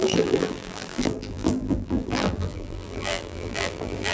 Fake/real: fake